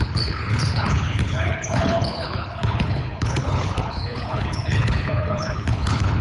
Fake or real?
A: fake